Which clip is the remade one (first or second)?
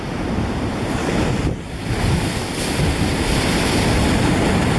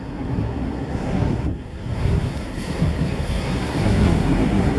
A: second